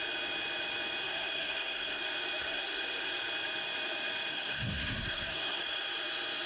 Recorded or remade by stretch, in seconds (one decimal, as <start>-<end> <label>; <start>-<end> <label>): 0.0-1.0 recorded; 1.0-2.0 remade; 2.0-2.4 recorded; 2.4-3.1 remade; 3.1-4.3 recorded; 4.3-5.6 remade; 5.6-6.5 recorded